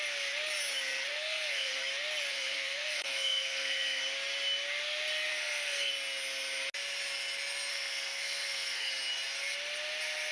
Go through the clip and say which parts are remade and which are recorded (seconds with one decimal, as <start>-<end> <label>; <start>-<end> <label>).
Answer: 0.0-1.1 recorded; 1.1-1.8 remade; 1.8-2.3 recorded; 2.3-4.0 remade; 4.0-5.3 recorded; 5.3-5.9 remade; 5.9-7.7 recorded; 7.7-8.9 remade; 8.9-10.3 recorded